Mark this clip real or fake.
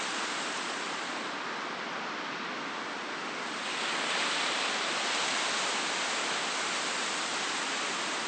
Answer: real